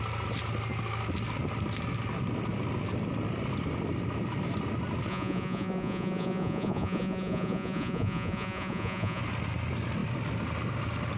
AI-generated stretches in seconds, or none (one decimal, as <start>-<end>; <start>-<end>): 5.1-9.2